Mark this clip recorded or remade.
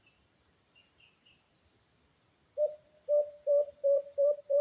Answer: remade